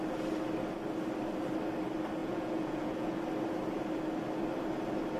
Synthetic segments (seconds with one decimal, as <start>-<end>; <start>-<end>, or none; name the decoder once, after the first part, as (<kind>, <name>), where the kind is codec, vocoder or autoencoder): 2.2-3.2 (vocoder, Vocos)